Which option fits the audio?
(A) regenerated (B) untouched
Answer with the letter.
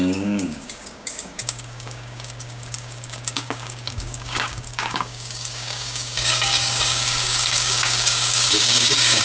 A